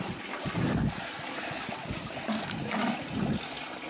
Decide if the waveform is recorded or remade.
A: recorded